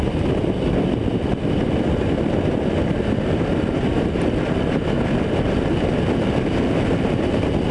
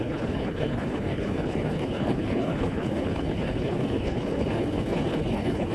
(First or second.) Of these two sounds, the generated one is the second